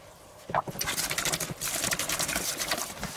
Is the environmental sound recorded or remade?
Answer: remade